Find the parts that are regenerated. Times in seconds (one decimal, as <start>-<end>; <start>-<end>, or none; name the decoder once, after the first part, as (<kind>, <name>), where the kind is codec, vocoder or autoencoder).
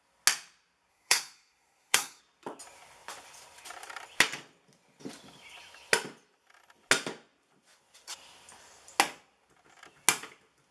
0.9-2.2 (codec, SNAC)